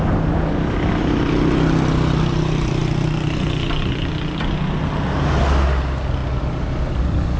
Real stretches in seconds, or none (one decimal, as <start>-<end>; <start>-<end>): 0.0-7.4